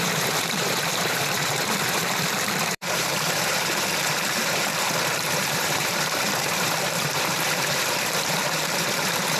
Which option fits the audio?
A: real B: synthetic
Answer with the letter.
B